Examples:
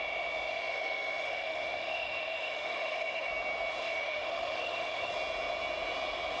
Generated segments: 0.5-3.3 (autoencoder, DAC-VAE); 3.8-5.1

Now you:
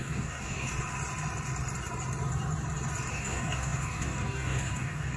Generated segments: 0.0-0.7 (codec, DAC); 3.1-5.2

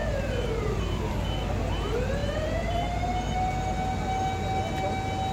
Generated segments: 0.0-1.1 (vocoder, BigVGAN v2); 2.2-3.0